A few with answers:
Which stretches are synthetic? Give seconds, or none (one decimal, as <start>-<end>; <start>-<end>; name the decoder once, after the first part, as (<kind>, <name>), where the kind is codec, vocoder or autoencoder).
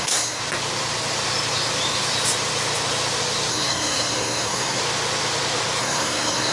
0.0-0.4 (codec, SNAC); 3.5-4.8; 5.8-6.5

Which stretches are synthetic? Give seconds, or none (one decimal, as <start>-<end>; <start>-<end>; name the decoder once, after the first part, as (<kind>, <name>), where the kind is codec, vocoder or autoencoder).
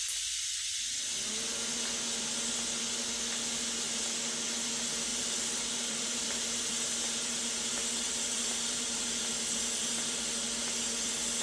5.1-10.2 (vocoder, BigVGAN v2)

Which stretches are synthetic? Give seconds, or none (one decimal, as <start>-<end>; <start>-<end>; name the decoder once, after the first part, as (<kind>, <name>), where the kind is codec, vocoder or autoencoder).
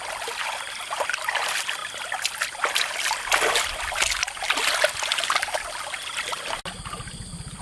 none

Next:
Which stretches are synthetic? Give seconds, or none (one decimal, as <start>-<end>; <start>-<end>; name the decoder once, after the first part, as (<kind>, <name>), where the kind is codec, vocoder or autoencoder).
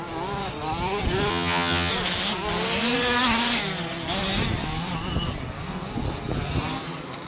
1.3-1.9 (vocoder, HiFi-GAN)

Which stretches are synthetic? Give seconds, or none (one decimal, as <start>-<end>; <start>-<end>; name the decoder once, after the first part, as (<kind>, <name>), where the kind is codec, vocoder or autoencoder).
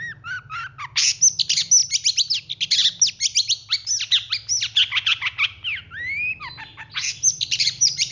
7.3-8.1 (vocoder, BigVGAN v2)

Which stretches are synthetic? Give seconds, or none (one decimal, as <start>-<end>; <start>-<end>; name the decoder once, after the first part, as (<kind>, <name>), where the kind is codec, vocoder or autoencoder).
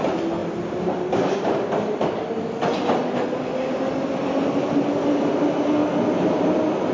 none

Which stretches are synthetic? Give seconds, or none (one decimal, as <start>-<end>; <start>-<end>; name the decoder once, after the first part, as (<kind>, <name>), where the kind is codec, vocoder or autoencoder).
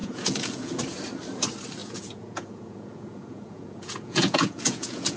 0.0-0.8 (vocoder, Vocos); 1.8-5.2